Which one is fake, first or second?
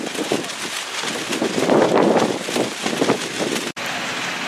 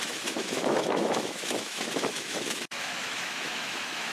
second